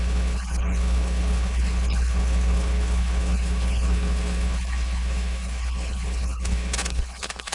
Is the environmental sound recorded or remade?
remade